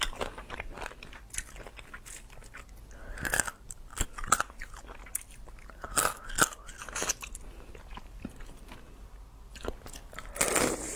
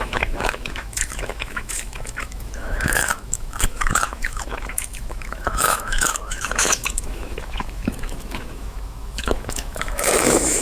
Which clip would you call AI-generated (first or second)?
second